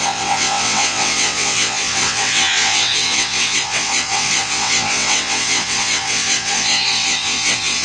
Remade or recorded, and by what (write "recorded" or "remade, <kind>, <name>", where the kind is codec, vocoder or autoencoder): remade, vocoder, WaveNeXt